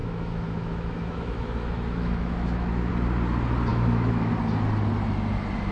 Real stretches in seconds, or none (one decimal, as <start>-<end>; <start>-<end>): 2.9-3.7; 4.3-5.7